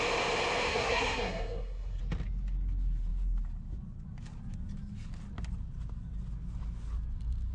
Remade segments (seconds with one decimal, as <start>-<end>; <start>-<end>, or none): 0.7-2.0